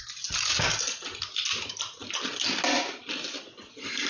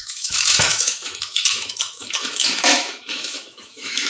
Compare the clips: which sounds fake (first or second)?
second